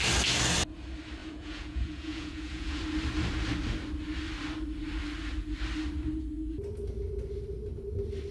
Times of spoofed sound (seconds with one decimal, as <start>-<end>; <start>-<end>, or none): 1.2-2.8